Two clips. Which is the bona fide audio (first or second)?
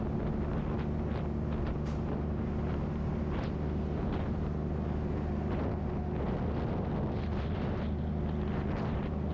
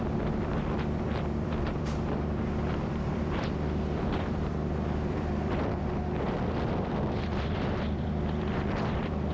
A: first